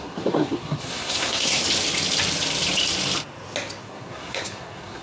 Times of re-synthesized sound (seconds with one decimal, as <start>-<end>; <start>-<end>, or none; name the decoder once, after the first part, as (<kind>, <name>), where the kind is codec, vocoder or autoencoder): 0.0-1.6 (codec, SNAC); 3.8-5.0